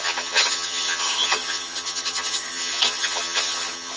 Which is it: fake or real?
fake